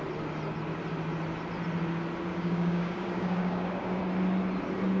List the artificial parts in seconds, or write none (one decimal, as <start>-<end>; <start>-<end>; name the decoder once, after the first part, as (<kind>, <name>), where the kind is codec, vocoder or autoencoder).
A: 2.3-4.0 (codec, DAC)